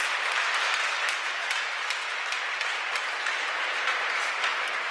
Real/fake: real